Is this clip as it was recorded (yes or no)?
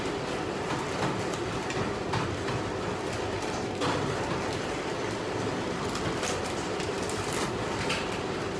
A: yes